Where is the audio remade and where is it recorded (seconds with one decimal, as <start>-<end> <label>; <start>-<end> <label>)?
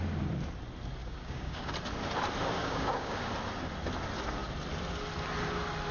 0.0-1.0 recorded; 1.0-1.7 remade; 1.7-2.6 recorded; 2.6-3.3 remade; 3.3-5.9 recorded